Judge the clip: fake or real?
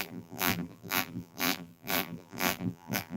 fake